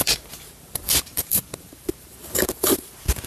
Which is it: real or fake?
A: fake